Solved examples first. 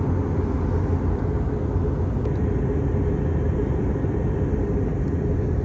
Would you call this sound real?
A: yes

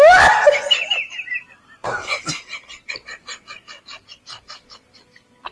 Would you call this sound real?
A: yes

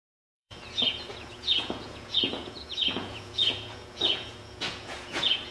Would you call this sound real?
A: no